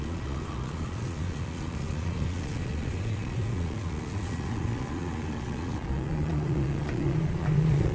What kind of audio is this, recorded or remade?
remade